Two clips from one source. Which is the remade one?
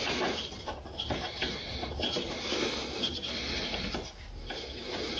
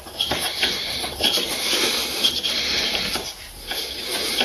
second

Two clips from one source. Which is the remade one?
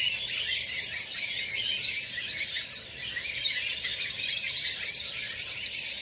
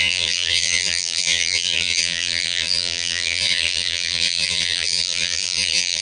second